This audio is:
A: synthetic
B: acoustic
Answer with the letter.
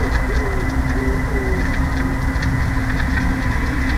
B